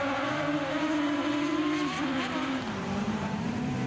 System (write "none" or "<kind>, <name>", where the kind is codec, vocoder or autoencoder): vocoder, BigVGAN v2